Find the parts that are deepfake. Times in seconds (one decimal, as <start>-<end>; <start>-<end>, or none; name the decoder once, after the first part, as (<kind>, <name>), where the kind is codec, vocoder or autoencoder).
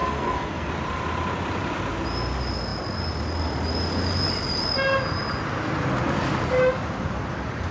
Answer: 0.0-0.7 (codec, SNAC)